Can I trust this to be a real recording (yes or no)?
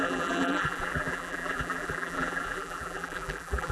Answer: no